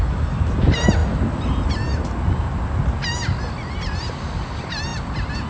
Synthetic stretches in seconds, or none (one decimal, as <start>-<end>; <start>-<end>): none